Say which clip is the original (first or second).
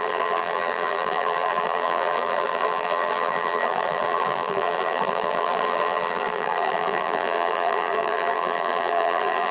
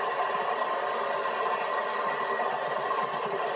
second